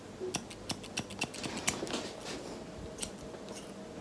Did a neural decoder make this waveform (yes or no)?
no